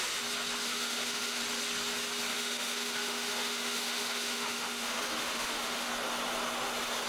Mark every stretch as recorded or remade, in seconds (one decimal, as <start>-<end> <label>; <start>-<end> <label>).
0.0-0.6 recorded; 0.6-1.4 remade; 1.4-2.3 recorded; 2.3-5.9 remade; 5.9-7.1 recorded